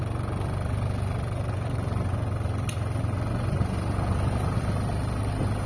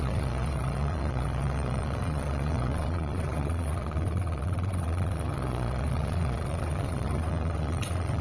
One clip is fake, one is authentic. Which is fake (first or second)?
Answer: second